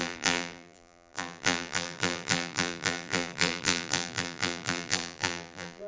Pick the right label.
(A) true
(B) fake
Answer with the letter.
B